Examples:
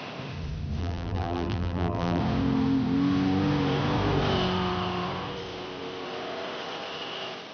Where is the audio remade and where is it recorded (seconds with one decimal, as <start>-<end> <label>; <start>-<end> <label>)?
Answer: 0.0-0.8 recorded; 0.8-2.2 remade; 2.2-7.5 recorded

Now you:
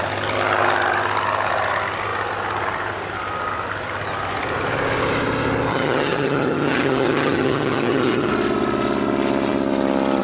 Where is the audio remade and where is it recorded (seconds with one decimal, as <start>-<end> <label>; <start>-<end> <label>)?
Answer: 0.0-5.7 recorded; 5.7-8.3 remade; 8.3-10.2 recorded

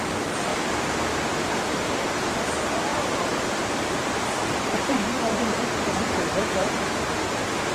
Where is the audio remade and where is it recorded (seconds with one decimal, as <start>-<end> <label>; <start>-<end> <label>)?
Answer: 0.0-2.9 recorded; 2.9-6.8 remade; 6.8-7.7 recorded

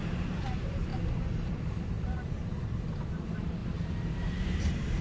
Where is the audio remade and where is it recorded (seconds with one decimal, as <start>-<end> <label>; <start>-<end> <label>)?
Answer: 0.0-0.9 remade; 0.9-1.5 recorded; 1.5-3.6 remade; 3.6-4.1 recorded; 4.1-5.0 remade

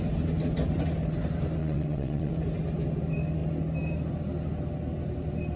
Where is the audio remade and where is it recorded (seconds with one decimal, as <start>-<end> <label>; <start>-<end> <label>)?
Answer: 0.0-1.6 recorded; 1.6-2.3 remade; 2.3-5.6 recorded

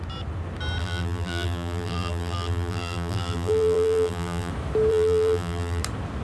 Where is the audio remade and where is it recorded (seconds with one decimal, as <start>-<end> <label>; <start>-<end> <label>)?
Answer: 0.0-0.8 recorded; 0.8-4.5 remade; 4.5-4.9 recorded; 4.9-5.8 remade; 5.8-6.2 recorded

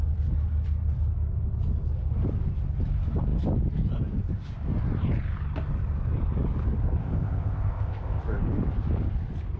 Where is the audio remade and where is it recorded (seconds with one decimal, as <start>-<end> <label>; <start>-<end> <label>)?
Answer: 0.0-7.0 recorded; 7.0-8.2 remade; 8.2-9.6 recorded

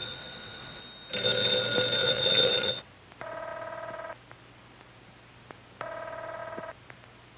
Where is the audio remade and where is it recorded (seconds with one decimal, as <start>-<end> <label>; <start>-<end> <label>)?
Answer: 0.0-0.8 remade; 0.8-2.0 recorded; 2.0-2.9 remade; 2.9-7.4 recorded